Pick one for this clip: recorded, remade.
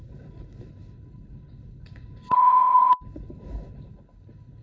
remade